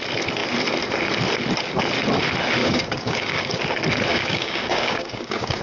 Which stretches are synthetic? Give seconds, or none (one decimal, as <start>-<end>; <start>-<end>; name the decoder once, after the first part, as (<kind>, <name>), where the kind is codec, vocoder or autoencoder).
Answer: 2.6-3.6 (codec, DAC); 4.1-5.6